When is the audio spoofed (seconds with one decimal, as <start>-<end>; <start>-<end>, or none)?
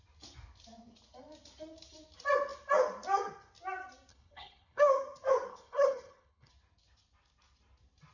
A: 4.1-4.9; 5.5-6.5